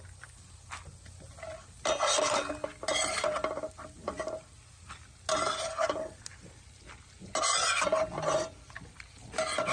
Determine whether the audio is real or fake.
real